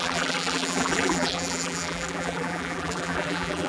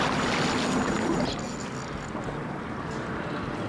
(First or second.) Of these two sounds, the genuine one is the second